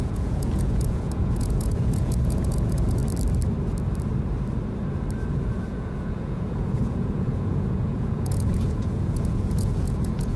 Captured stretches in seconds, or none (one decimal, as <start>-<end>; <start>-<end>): 3.0-5.3